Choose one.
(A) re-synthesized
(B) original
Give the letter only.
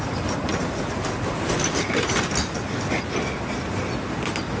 B